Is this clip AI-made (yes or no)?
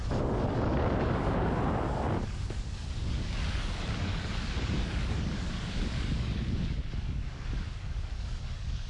yes